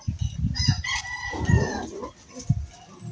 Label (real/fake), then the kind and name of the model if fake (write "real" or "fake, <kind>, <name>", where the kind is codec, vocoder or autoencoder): real